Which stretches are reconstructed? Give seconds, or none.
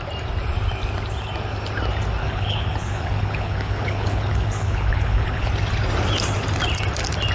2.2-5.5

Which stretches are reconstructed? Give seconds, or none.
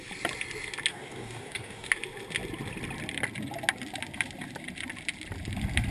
0.9-1.9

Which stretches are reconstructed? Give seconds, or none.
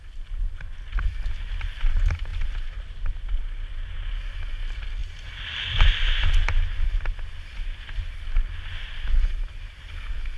none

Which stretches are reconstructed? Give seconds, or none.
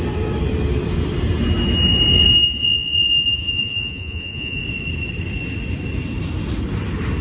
2.6-4.6